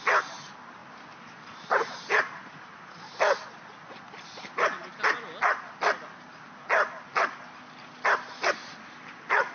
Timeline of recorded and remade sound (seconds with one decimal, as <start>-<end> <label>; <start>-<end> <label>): 0.0-9.5 recorded